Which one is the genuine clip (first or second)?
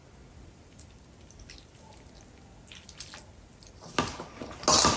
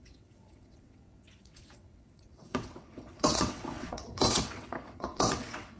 first